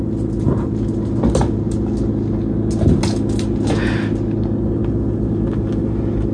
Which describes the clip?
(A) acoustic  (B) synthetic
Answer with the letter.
A